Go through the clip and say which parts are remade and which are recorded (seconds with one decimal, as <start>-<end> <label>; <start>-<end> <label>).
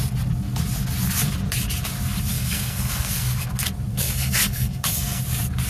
0.0-2.3 recorded; 2.3-3.5 remade; 3.5-3.9 recorded; 3.9-5.2 remade; 5.2-5.7 recorded